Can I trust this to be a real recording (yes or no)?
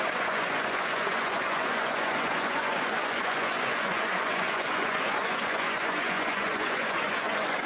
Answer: no